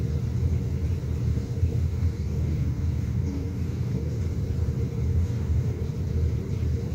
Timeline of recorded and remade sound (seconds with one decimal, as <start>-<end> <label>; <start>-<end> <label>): 0.0-1.3 recorded; 1.3-4.2 remade; 4.2-5.1 recorded; 5.1-5.8 remade; 5.8-6.9 recorded